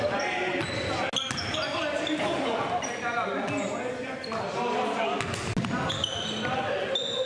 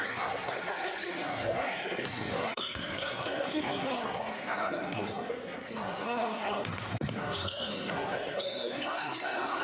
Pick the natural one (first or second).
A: first